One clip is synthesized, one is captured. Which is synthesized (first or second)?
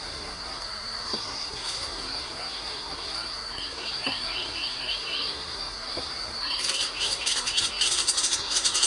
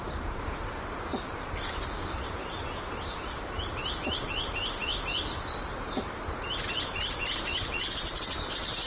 first